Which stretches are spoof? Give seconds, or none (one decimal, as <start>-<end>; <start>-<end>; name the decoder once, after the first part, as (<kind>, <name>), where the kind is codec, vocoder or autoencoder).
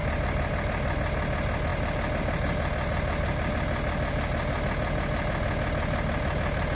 0.0-0.5 (vocoder, BigVGAN v2)